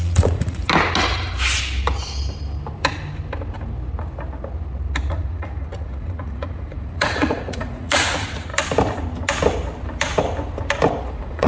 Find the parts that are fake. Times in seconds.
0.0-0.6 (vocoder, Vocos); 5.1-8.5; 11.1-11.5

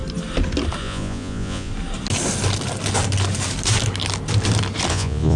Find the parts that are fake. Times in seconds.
0.8-1.7 (vocoder, Vocos); 4.9-5.4